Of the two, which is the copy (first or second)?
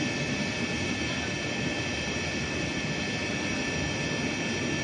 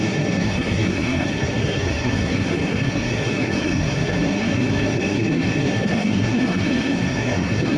second